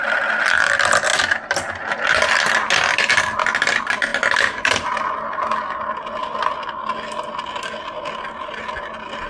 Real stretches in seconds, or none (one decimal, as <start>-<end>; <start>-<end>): 0.0-9.3